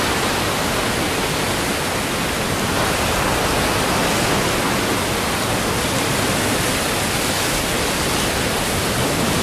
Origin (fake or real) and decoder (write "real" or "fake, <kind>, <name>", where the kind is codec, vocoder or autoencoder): real